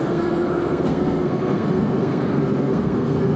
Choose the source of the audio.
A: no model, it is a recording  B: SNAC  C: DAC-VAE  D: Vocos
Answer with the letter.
B